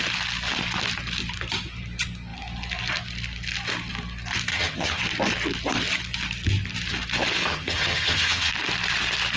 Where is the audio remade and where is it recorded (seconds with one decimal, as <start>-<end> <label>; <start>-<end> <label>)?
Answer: 0.0-4.5 recorded; 4.5-5.0 remade; 5.0-7.5 recorded; 7.5-8.5 remade; 8.5-9.4 recorded